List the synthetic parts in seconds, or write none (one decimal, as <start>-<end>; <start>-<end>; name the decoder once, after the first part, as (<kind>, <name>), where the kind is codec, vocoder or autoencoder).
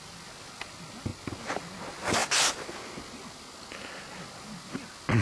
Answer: none